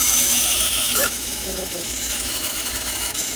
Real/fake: fake